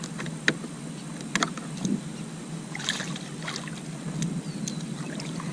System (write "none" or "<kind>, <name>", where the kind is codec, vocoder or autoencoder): none